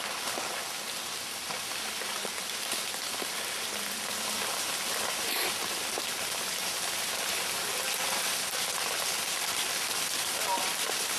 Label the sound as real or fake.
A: real